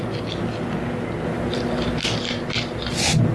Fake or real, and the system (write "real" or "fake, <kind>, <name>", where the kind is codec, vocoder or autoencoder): real